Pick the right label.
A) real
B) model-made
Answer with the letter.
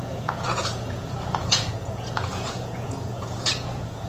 B